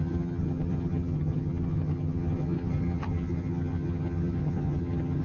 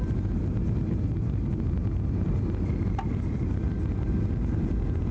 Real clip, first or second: second